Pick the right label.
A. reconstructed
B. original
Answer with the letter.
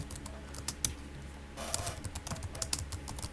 B